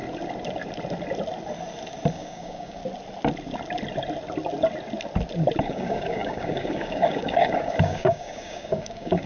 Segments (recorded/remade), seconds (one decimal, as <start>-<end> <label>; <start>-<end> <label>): 0.0-2.1 recorded; 2.1-2.8 remade; 2.8-5.6 recorded; 5.6-9.3 remade